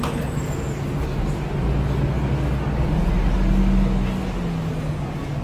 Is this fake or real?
real